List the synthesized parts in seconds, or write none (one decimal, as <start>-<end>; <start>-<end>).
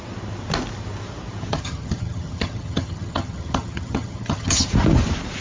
1.5-4.7